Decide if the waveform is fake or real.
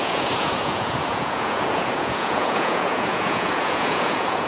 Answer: fake